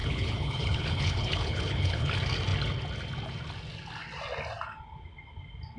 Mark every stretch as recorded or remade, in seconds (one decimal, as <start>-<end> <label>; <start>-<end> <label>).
0.0-2.1 remade; 2.1-5.8 recorded